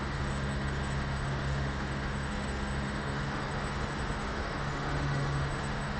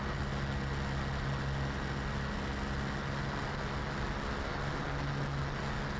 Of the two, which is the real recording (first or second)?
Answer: second